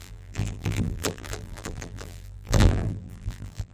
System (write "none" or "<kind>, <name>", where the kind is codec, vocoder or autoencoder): vocoder, BigVGAN v2